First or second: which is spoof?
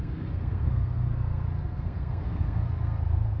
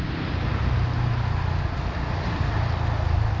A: first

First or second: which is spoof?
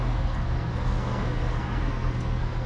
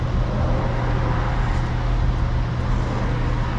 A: first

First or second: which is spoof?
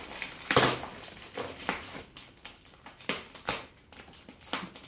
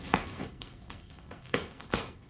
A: second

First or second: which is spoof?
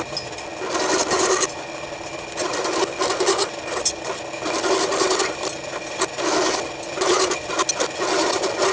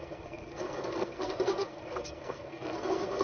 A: second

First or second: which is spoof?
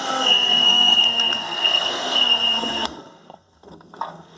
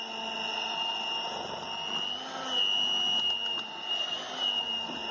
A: first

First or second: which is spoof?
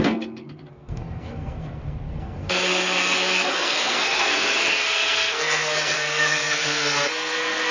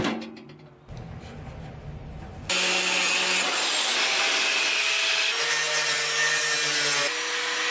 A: first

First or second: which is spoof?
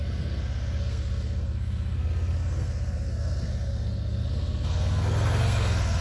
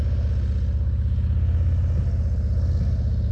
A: first